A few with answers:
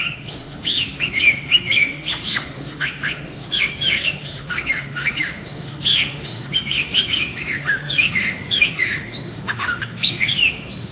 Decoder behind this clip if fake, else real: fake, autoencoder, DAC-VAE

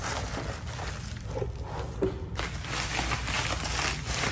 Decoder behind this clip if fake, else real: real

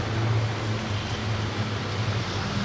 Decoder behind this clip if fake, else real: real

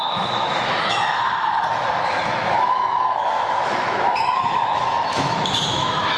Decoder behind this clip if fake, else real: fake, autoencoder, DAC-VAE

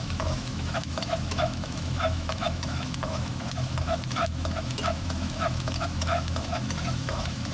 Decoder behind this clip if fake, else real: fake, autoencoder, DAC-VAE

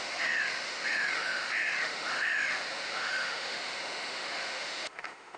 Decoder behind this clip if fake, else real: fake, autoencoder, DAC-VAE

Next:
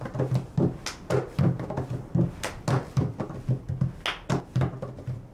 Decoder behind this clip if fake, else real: real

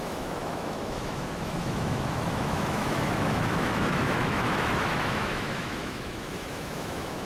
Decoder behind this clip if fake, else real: fake, autoencoder, DAC-VAE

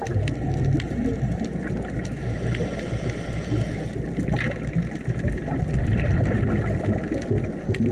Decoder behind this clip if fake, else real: real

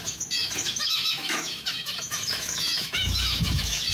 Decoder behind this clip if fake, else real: fake, autoencoder, DAC-VAE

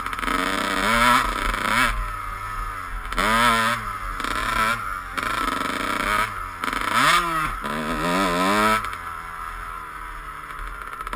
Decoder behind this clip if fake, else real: real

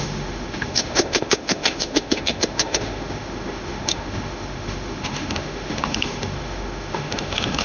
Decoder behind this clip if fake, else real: fake, autoencoder, DAC-VAE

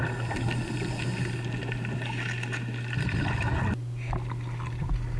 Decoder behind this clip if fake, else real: real